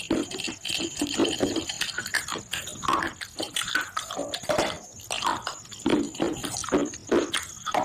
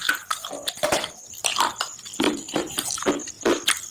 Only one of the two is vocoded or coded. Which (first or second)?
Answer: second